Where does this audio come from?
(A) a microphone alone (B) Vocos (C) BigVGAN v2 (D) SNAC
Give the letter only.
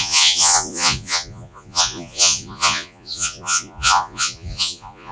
B